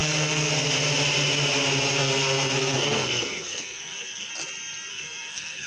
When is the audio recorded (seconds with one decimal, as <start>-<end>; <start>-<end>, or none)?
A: 0.5-2.0; 4.3-4.9